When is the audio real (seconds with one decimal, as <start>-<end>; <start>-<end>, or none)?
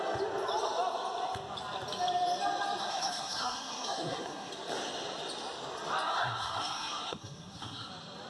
0.0-2.8; 4.5-6.1; 7.9-8.3